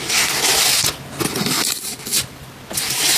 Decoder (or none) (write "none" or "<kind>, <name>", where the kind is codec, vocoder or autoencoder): none